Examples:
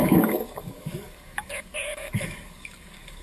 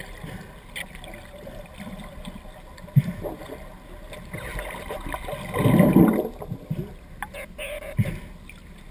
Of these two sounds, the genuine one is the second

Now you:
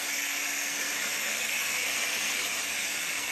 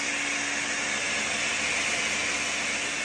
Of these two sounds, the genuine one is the second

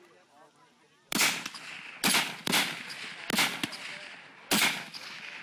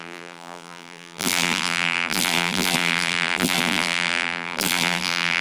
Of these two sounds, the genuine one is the first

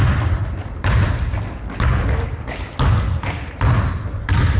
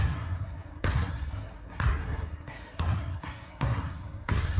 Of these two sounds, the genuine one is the first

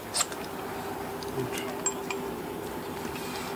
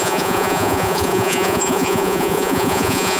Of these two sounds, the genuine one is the first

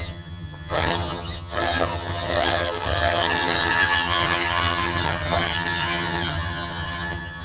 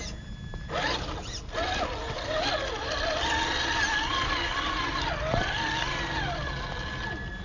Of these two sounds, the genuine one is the second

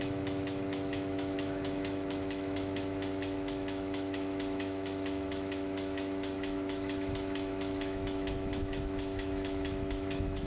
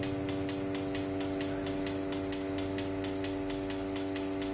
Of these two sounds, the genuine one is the second